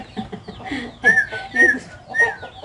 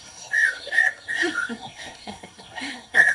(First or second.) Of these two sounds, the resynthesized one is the second